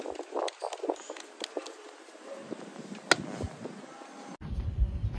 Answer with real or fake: real